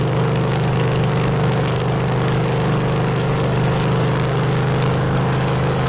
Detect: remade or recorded remade